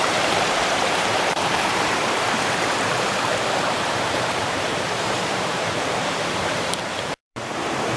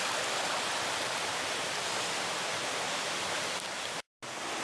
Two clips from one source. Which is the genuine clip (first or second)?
second